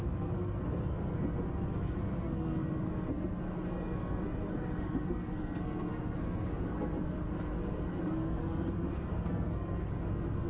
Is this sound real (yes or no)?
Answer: no